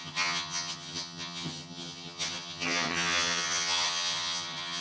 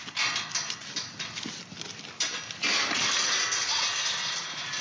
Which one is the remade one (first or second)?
first